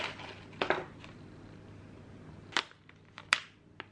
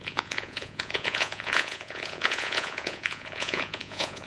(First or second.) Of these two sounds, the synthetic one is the second